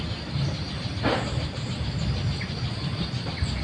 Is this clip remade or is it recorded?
recorded